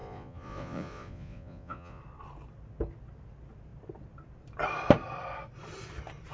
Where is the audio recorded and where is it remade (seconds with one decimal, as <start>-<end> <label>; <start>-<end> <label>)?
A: 0.0-2.0 remade; 2.0-6.3 recorded